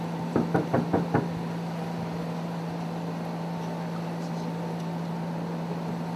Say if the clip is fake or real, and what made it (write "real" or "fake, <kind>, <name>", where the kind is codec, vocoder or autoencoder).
fake, vocoder, BigVGAN v2